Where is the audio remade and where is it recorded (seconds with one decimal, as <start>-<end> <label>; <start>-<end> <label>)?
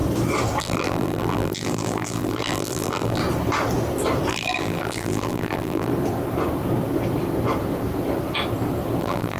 0.0-0.6 recorded; 0.6-3.2 remade; 3.2-4.3 recorded; 4.3-5.9 remade; 5.9-9.0 recorded; 9.0-9.4 remade